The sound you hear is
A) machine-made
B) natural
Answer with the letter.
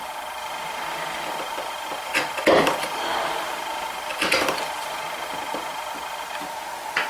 B